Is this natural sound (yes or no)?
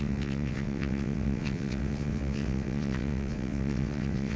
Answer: no